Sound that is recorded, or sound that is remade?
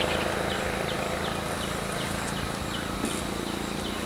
recorded